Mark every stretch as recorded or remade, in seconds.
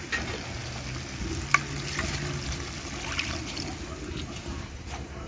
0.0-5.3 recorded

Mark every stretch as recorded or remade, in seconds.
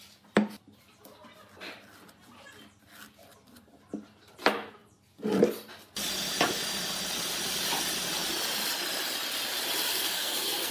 0.0-9.9 recorded; 9.9-10.7 remade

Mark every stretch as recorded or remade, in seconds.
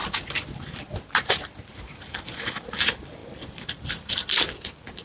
0.0-2.1 remade; 2.1-3.2 recorded; 3.2-4.5 remade; 4.5-5.0 recorded